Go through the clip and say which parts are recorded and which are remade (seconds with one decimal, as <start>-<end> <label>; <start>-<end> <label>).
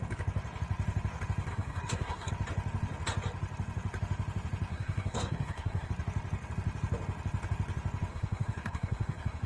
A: 0.0-1.5 recorded; 1.5-2.3 remade; 2.3-4.7 recorded; 4.7-5.9 remade; 5.9-8.1 recorded; 8.1-9.5 remade